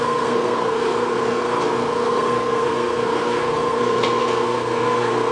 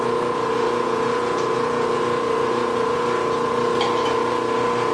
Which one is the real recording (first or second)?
second